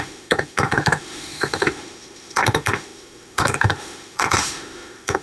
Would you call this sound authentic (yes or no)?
no